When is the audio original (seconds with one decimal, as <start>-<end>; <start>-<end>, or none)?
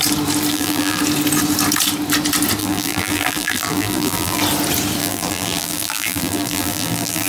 0.0-0.5; 1.0-2.6; 4.4-5.0